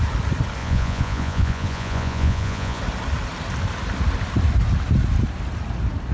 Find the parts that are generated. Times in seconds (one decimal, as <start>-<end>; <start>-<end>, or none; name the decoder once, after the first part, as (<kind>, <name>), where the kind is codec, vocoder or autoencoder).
0.6-2.8 (vocoder, Vocos)